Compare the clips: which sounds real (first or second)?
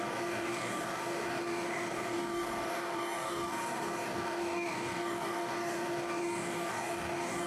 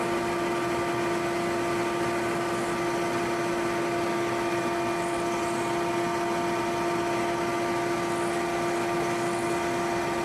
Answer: second